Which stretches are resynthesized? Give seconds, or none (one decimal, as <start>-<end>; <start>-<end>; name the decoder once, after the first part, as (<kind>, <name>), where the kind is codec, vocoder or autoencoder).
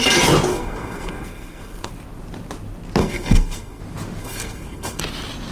0.5-1.9 (codec, SNAC); 3.0-3.8; 4.2-5.0